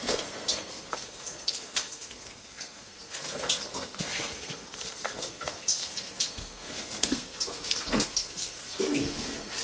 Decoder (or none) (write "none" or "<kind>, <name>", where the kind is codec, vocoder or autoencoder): codec, SNAC